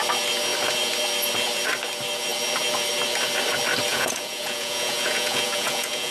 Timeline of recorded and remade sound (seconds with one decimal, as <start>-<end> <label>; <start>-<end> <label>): 0.0-3.9 recorded; 3.9-6.1 remade